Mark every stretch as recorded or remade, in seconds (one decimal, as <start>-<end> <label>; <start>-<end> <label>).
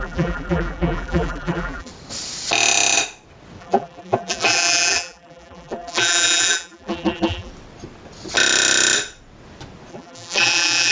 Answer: 0.0-1.9 remade; 1.9-3.6 recorded; 3.6-7.5 remade; 7.5-9.9 recorded; 9.9-10.9 remade